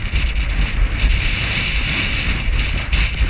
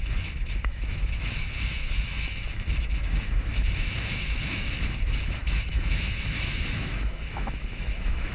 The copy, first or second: second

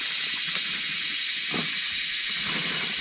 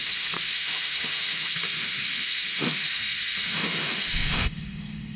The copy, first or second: second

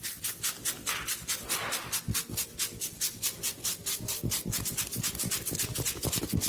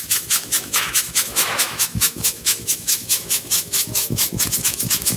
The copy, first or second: second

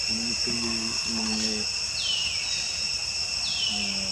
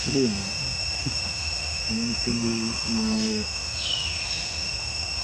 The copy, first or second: second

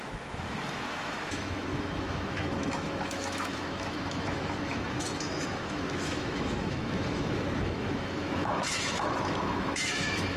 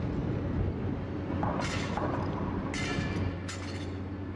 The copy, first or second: first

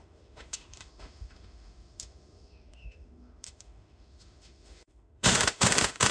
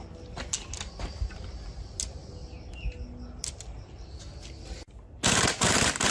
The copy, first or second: first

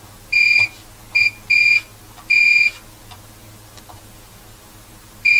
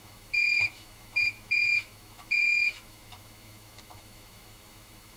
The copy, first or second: second